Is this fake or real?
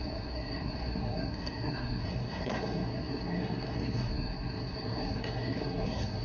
fake